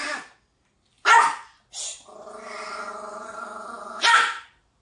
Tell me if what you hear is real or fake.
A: real